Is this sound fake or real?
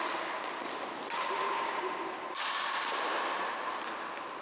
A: real